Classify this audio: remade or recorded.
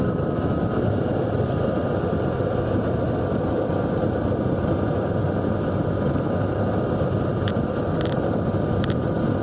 recorded